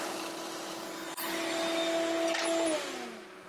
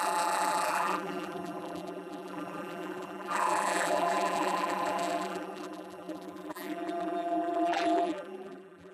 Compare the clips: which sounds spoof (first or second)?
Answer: second